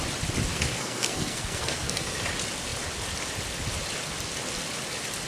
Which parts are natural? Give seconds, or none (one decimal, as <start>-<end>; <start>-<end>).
0.0-0.5; 2.2-5.3